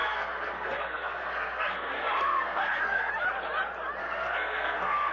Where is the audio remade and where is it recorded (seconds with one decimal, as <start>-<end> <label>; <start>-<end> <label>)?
0.0-3.1 remade; 3.1-4.0 recorded; 4.0-5.1 remade